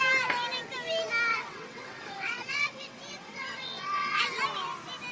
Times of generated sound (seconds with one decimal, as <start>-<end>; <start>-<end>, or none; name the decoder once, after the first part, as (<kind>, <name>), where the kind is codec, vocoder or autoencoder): 1.3-4.4 (vocoder, WaveNeXt)